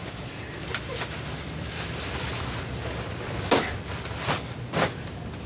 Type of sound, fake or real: real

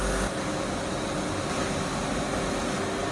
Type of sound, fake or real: real